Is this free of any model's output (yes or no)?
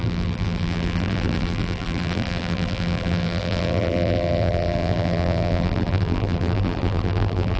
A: no